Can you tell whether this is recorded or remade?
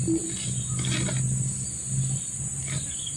recorded